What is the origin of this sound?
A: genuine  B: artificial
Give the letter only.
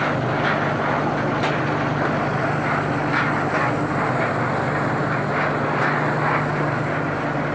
A